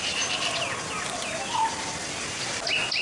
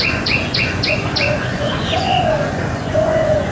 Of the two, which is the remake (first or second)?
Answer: second